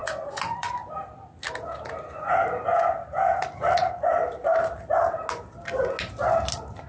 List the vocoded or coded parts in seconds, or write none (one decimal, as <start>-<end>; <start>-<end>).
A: 0.0-0.9